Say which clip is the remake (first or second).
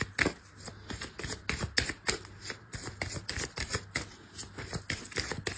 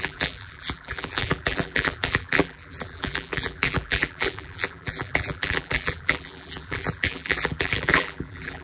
second